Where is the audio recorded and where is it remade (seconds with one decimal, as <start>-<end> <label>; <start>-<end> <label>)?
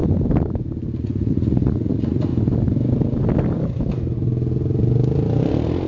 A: 0.0-1.0 recorded; 1.0-2.3 remade; 2.3-5.9 recorded